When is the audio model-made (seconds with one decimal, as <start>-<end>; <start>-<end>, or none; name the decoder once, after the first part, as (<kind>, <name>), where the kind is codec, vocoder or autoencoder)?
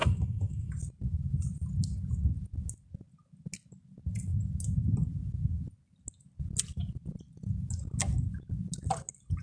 0.0-0.7 (codec, SNAC)